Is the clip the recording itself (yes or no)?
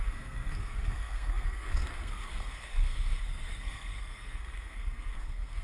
no